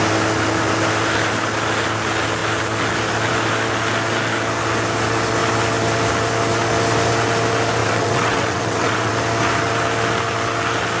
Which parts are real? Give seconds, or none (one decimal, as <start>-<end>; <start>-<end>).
0.0-7.8; 9.1-11.0